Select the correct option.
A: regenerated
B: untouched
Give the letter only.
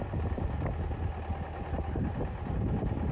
B